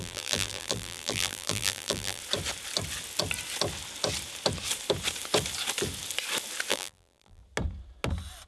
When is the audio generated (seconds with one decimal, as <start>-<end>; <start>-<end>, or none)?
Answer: 0.0-2.2; 6.7-7.4